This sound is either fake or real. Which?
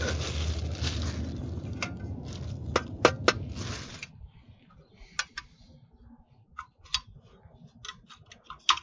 real